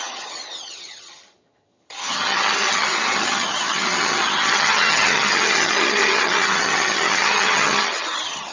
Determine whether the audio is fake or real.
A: fake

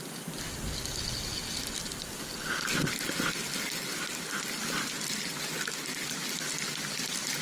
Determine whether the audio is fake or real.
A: real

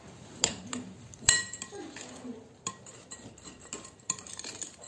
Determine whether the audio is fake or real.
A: real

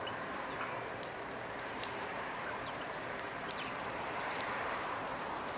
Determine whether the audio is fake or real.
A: fake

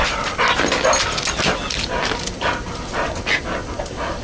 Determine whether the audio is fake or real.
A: real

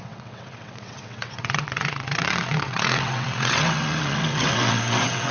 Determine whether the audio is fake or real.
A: fake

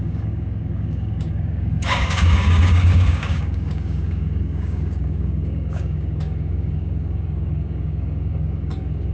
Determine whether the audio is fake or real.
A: fake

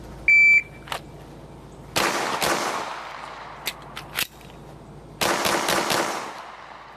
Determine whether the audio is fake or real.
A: real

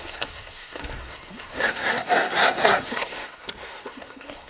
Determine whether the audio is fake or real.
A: fake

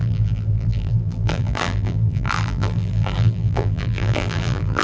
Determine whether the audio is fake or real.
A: fake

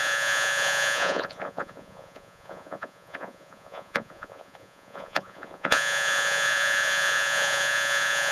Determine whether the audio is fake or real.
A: fake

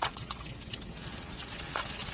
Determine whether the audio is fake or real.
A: fake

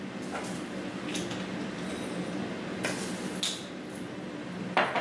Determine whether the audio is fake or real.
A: real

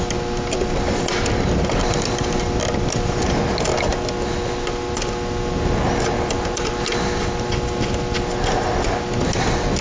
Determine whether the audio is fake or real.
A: real